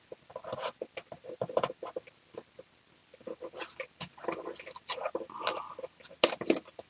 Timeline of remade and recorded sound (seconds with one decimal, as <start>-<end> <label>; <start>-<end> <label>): 0.0-6.9 recorded